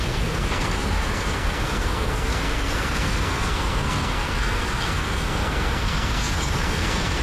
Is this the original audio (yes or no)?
no